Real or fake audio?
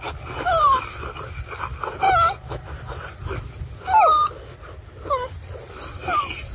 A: real